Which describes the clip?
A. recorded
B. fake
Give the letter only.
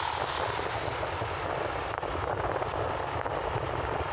A